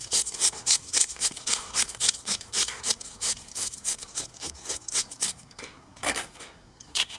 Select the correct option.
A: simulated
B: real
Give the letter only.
A